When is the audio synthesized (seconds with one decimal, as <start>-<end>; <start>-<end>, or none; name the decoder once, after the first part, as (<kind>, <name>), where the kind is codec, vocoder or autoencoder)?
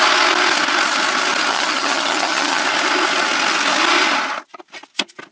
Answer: 1.5-2.6 (vocoder, HiFi-GAN)